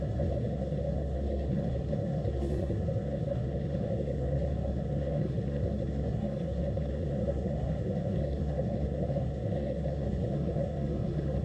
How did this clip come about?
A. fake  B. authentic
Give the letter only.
A